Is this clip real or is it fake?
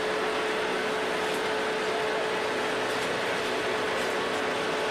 real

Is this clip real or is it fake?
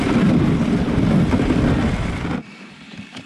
real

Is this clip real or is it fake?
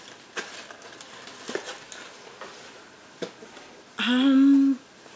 real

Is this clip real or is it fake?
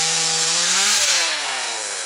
fake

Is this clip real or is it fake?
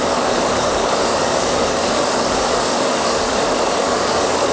fake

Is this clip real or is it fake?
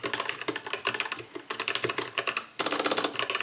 real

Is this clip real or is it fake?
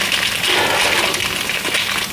real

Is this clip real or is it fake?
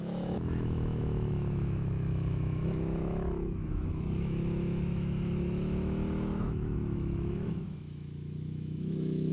fake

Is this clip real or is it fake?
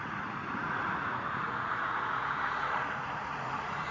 fake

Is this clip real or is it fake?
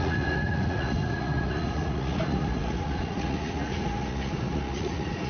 fake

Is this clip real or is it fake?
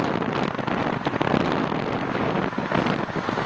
real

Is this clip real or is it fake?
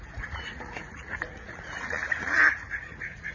fake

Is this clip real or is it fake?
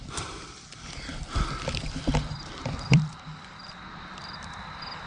fake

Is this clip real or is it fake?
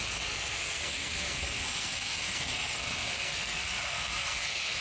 fake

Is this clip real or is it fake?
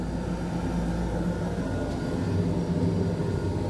real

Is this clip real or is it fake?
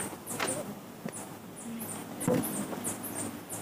real